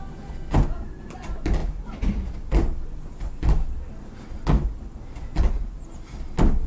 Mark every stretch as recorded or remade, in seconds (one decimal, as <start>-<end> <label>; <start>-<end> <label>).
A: 0.0-6.7 recorded